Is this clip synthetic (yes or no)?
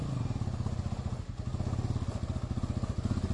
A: no